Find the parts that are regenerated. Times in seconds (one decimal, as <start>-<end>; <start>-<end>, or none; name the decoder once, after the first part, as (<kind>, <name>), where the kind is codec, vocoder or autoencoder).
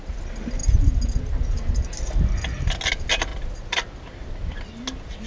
none